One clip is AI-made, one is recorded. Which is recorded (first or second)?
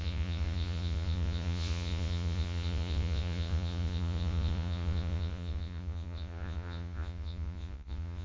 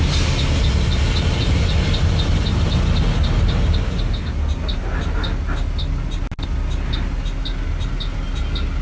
second